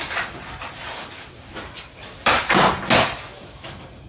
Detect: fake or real real